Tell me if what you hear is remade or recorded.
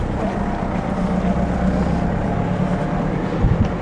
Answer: recorded